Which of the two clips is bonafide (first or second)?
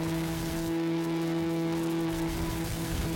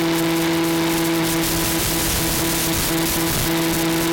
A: second